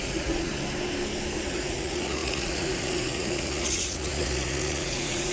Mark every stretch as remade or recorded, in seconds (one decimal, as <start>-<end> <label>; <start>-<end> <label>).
0.0-0.5 remade; 0.5-1.5 recorded; 1.5-5.3 remade